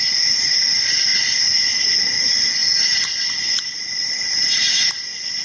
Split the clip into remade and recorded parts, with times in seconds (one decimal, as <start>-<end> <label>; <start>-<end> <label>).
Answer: 0.0-5.4 recorded